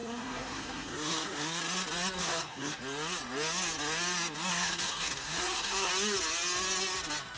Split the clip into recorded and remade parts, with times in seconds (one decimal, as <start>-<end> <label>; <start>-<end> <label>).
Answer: 0.0-1.6 remade; 1.6-2.2 recorded; 2.2-2.8 remade; 2.8-4.5 recorded; 4.5-5.9 remade; 5.9-7.4 recorded